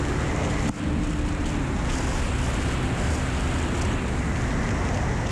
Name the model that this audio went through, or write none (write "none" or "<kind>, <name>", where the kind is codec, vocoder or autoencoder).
none